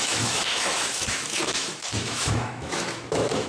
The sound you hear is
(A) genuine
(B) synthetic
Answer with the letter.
B